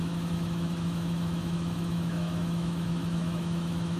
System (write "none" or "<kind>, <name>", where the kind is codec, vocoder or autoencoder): autoencoder, DAC-VAE